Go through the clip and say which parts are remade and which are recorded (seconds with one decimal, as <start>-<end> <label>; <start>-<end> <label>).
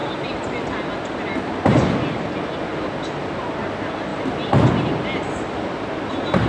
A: 0.0-6.5 recorded